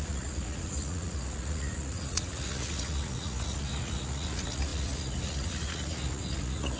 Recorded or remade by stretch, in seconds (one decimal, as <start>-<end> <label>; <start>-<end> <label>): 0.0-6.8 remade